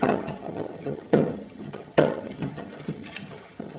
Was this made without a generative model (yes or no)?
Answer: no